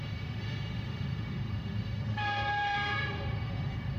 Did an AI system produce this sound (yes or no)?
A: yes